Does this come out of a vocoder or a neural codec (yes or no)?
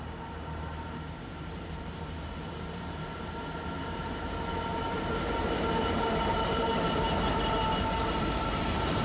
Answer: yes